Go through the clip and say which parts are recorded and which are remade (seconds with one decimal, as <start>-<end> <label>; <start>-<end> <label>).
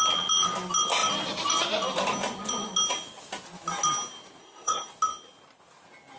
0.0-4.4 recorded; 4.4-4.9 remade; 4.9-6.2 recorded